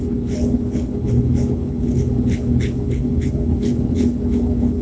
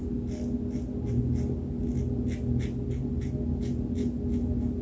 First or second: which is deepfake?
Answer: first